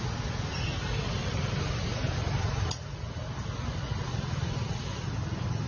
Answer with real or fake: real